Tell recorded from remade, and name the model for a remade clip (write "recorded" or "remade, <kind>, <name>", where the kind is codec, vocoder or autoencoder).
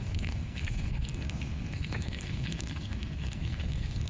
remade, codec, SNAC